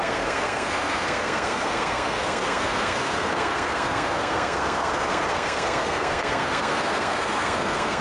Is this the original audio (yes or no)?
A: no